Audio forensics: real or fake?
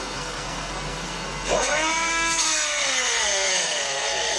fake